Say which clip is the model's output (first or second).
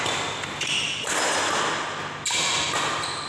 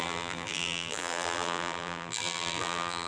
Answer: second